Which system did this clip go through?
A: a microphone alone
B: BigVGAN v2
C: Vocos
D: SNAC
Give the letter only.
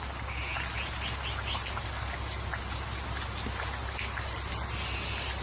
A